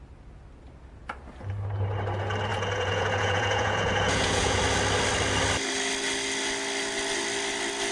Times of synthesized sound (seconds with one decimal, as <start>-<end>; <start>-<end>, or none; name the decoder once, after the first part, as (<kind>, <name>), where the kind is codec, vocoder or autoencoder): 2.5-4.6 (vocoder, Vocos)